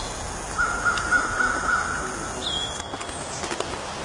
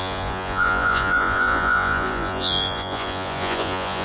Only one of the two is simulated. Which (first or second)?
second